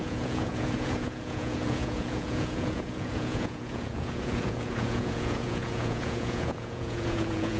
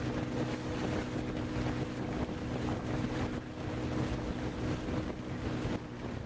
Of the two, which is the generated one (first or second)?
first